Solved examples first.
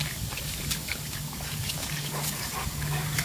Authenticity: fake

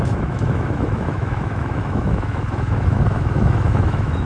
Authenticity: fake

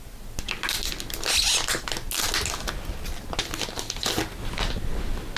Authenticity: real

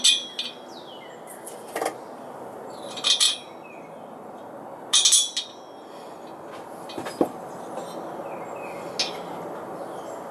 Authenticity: real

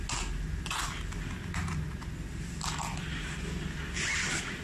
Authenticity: real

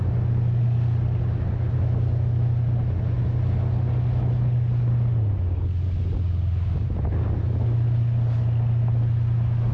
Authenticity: real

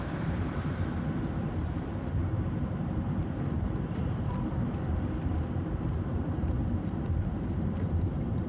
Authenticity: fake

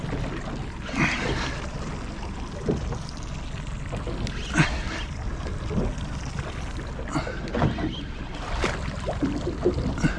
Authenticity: real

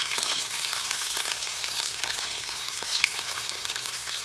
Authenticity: fake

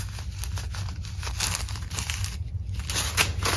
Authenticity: real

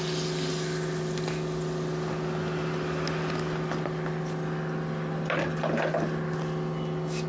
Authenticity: real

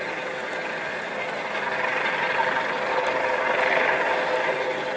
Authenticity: real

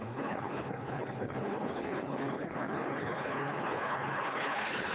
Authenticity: fake